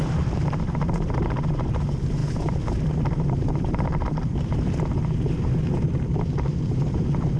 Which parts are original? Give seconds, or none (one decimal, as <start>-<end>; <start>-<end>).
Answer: none